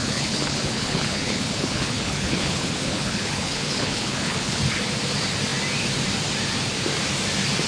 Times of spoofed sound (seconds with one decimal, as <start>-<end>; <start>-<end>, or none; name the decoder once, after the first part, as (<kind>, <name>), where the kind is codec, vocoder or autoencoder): 0.0-4.6 (codec, HILCodec)